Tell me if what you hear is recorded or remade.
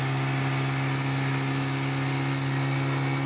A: recorded